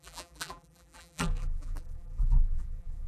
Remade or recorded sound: remade